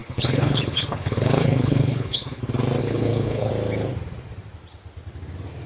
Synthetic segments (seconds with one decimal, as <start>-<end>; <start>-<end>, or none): 0.0-2.4; 2.8-3.5